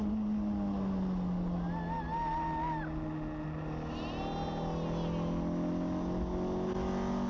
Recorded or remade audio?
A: recorded